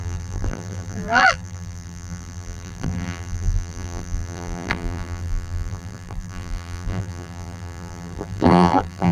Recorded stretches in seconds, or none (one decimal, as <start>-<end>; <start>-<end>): none